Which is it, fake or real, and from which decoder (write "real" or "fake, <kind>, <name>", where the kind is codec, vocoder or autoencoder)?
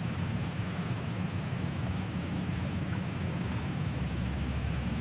fake, autoencoder, DAC-VAE